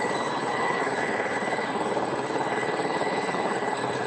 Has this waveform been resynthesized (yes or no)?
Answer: yes